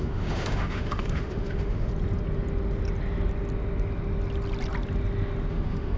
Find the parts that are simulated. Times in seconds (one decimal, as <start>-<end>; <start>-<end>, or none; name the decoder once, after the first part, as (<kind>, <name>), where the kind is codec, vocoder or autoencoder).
0.0-1.9 (autoencoder, DAC-VAE); 5.5-6.0